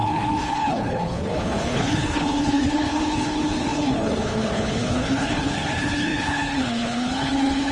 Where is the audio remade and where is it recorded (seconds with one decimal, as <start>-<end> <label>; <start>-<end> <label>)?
0.0-7.7 remade